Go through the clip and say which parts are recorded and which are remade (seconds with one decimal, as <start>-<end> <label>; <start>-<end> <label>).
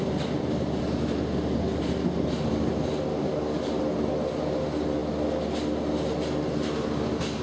0.0-3.1 recorded; 3.1-3.7 remade; 3.7-7.4 recorded